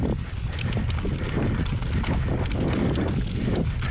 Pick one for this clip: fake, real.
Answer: real